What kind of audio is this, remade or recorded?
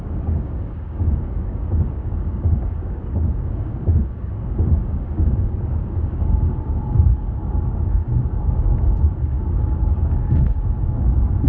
remade